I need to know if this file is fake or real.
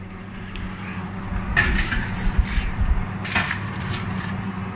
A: fake